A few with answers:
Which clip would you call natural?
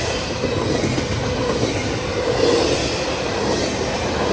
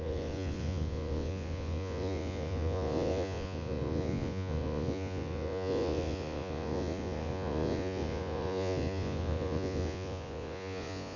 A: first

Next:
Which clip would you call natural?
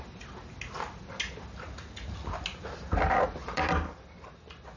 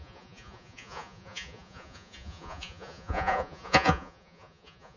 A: first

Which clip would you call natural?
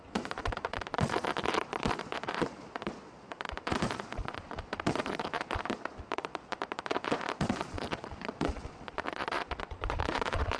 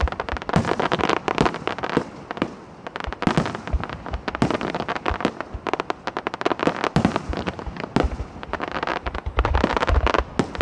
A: second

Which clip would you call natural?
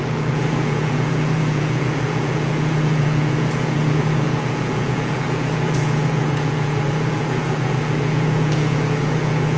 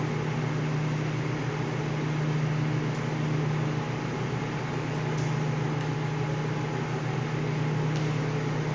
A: second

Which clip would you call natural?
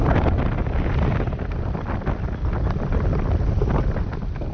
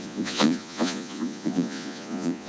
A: first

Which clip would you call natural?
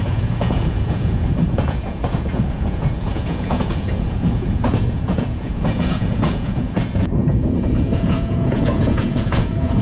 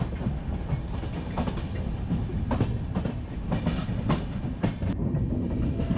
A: second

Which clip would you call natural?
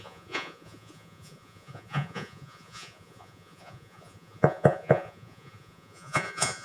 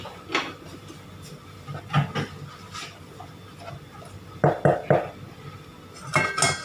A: second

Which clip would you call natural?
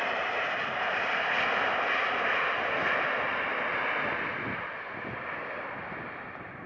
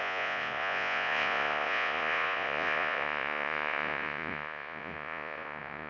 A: first